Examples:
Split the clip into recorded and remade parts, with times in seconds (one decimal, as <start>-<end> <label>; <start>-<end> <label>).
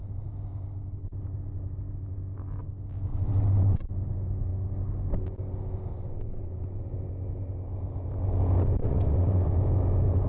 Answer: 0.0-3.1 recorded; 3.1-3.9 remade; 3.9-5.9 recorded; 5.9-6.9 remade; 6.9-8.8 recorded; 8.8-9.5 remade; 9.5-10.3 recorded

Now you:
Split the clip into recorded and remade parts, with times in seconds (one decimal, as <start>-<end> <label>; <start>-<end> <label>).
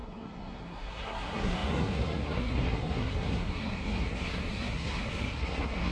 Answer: 0.0-5.9 remade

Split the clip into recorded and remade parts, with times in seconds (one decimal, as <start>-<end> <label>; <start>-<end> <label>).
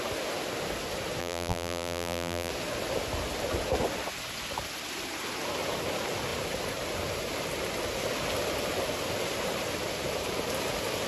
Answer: 0.0-1.2 recorded; 1.2-2.5 remade; 2.5-11.1 recorded